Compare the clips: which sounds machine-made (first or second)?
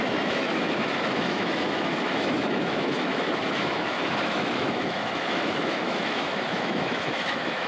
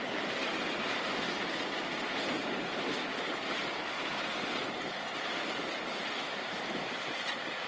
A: first